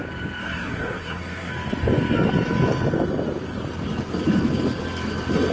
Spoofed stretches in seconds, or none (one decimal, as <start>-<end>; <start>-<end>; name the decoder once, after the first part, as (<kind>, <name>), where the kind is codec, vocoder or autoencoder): 0.4-1.5 (codec, SNAC)